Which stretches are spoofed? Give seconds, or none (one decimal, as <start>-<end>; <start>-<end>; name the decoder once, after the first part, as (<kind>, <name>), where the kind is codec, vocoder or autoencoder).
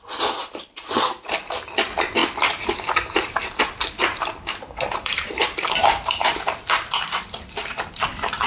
0.4-1.3 (vocoder, BigVGAN v2); 2.2-6.7